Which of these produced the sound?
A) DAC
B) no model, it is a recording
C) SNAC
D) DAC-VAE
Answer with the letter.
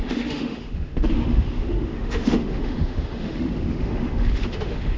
D